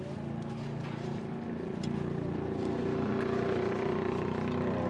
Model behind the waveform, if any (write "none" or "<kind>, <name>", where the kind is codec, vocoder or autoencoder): none